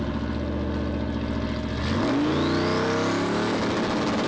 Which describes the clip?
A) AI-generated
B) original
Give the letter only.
B